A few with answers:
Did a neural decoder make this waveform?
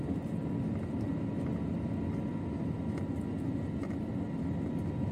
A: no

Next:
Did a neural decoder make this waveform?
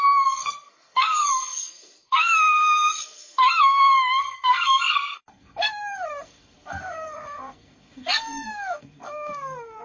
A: yes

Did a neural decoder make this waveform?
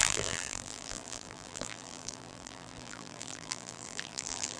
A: yes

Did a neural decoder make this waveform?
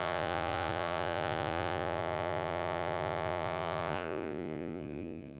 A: yes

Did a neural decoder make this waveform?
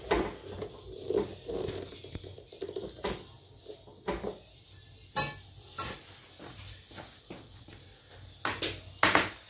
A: no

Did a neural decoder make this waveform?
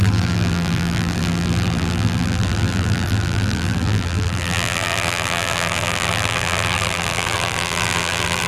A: yes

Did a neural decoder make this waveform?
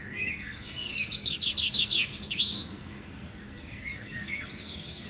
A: yes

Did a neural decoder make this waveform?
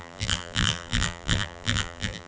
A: yes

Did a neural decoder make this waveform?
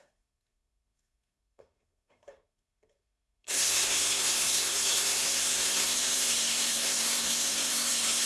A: yes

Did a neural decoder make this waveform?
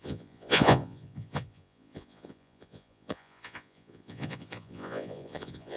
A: yes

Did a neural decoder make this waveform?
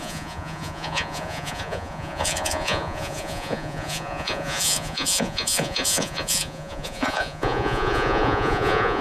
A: yes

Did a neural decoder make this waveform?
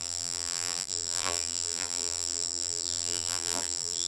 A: yes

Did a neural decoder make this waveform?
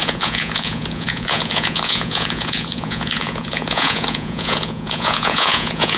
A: yes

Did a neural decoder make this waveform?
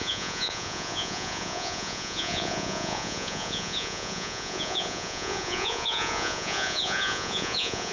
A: yes